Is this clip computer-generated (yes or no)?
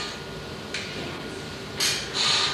no